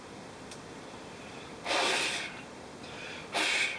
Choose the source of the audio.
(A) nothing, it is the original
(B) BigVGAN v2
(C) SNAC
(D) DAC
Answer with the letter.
B